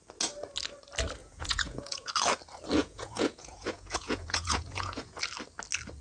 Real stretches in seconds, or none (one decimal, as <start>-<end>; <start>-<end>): 0.0-1.2; 2.1-2.8; 5.2-6.0